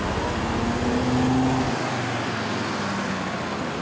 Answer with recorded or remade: recorded